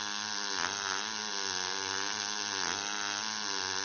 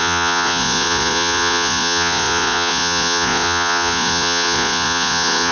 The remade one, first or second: second